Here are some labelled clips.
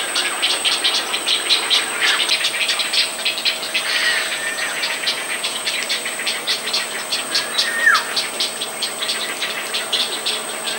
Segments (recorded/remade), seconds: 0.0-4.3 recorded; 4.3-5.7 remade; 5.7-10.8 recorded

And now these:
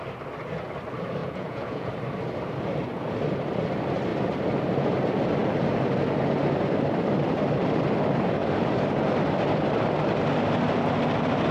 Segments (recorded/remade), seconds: 0.0-1.2 recorded; 1.2-1.9 remade; 1.9-11.5 recorded

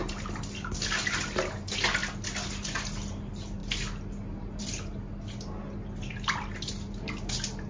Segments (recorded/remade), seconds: 0.0-7.7 recorded

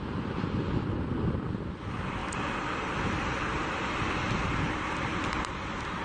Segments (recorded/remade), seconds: 0.0-6.0 recorded

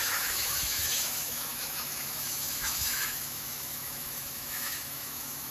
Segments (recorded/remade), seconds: 0.0-5.5 remade

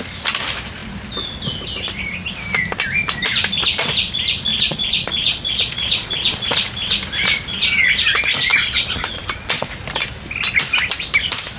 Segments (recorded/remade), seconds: 0.0-4.5 recorded; 4.5-6.4 remade; 6.4-8.5 recorded; 8.5-9.7 remade; 9.7-11.6 recorded

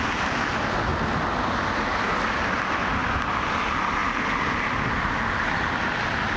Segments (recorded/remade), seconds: 0.0-3.0 recorded; 3.0-3.6 remade; 3.6-4.0 recorded; 4.0-5.2 remade; 5.2-6.4 recorded

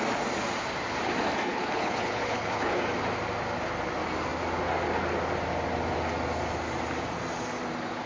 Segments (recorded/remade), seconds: 0.0-1.5 recorded; 1.5-2.8 remade; 2.8-8.1 recorded